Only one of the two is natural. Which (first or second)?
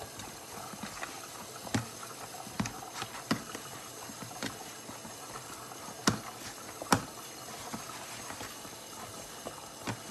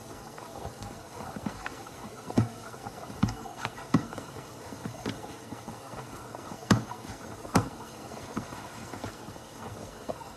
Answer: first